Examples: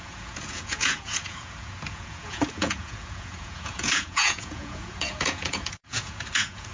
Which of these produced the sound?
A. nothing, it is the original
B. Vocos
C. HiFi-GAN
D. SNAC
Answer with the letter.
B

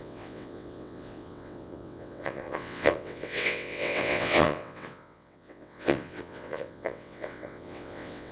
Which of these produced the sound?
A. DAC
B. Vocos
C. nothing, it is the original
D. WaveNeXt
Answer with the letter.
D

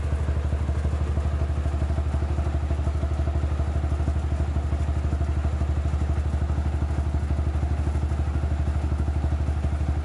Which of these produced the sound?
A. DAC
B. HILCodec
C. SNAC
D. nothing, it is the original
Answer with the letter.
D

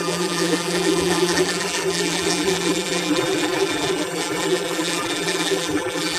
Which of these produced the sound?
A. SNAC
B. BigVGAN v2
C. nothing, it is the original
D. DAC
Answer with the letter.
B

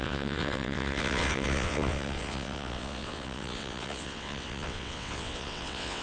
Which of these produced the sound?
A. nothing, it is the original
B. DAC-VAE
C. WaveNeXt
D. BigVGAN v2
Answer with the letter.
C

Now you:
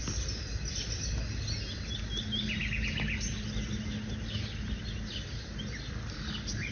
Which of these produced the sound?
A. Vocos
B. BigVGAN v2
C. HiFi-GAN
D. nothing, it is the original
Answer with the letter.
D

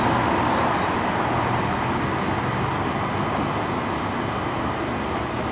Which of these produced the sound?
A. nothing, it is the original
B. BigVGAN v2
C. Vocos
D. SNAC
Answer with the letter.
A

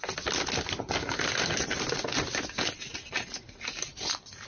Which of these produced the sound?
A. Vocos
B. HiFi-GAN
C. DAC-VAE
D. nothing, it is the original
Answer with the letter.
D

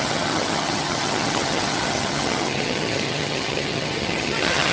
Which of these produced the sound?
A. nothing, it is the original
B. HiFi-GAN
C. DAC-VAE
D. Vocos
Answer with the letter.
B